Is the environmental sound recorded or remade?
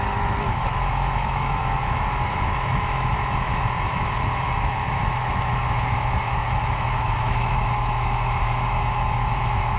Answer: remade